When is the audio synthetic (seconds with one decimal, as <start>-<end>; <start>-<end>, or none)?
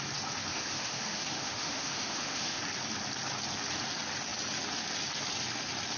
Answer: 0.5-2.6